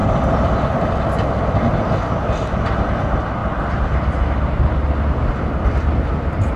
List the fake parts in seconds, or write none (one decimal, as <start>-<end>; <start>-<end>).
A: 2.8-3.4; 6.1-6.6